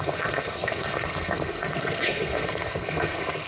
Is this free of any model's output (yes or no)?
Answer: no